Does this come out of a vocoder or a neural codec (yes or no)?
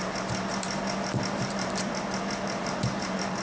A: yes